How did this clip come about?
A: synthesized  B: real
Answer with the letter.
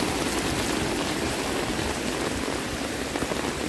B